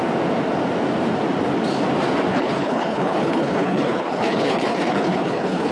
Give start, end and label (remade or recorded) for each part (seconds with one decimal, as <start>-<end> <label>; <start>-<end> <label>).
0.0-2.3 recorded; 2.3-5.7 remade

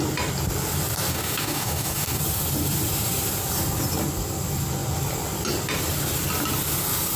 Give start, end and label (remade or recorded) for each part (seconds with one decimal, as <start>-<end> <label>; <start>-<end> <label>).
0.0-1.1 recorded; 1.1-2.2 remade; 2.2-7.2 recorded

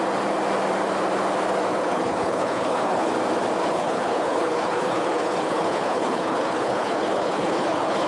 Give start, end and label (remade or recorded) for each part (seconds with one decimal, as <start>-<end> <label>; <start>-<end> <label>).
0.0-1.7 recorded; 1.7-3.1 remade; 3.1-3.6 recorded; 3.6-8.1 remade

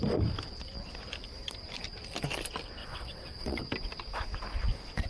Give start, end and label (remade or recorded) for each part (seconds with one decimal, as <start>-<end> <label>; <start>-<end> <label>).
0.0-2.8 recorded; 2.8-3.6 remade; 3.6-5.1 recorded

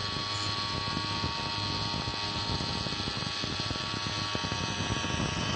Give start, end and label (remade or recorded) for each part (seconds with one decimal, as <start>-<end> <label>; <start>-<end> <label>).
0.0-5.6 recorded

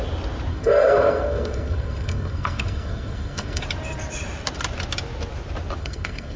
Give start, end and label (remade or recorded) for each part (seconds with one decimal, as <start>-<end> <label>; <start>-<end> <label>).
0.0-0.5 recorded; 0.5-3.6 remade; 3.6-5.8 recorded; 5.8-6.4 remade